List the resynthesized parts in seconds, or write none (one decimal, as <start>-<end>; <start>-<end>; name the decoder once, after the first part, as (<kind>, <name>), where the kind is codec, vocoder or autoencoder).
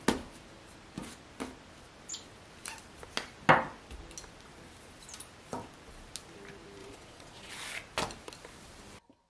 6.8-7.5 (vocoder, Vocos)